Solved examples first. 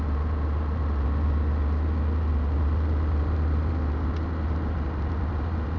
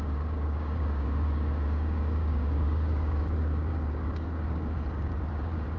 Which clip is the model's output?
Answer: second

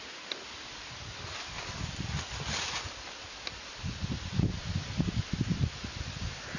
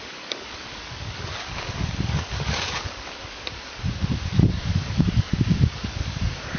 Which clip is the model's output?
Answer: second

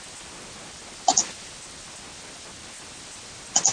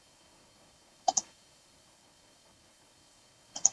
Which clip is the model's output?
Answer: second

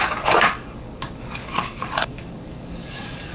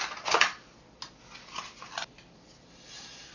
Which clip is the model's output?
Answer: first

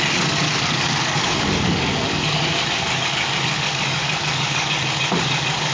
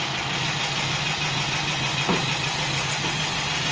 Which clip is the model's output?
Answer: first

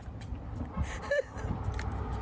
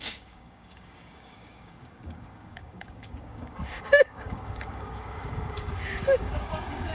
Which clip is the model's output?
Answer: second